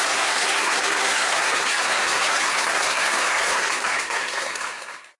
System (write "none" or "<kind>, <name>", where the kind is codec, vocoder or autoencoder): codec, SNAC